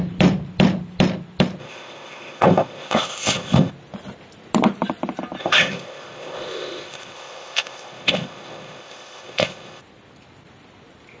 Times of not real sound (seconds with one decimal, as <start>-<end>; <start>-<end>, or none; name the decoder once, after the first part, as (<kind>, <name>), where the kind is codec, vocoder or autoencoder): 1.6-3.7 (codec, ZipCodec); 5.4-9.8